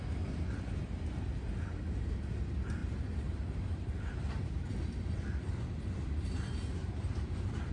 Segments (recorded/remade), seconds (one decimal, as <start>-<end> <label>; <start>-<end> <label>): 0.0-2.8 recorded; 2.8-4.7 remade; 4.7-6.8 recorded; 6.8-7.7 remade